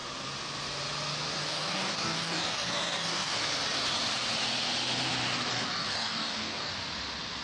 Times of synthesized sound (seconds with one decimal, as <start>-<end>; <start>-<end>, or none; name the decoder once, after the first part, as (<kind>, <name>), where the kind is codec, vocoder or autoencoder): 1.4-3.4 (codec, DAC); 5.5-6.7